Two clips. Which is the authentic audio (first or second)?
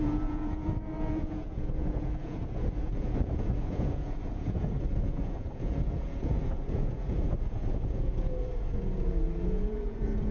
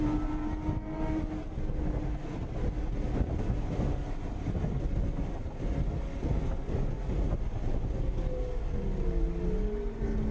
second